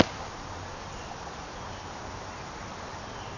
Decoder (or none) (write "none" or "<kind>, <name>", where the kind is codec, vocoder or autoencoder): none